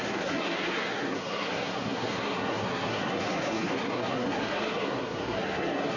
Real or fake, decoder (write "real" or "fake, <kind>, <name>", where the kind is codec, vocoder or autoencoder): fake, codec, SNAC